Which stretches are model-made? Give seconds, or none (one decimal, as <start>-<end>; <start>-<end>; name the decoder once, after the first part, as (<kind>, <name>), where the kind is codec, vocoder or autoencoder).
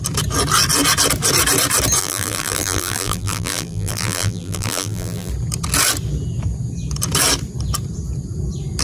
2.0-5.3 (vocoder, BigVGAN v2)